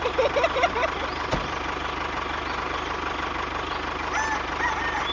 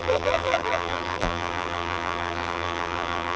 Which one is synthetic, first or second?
second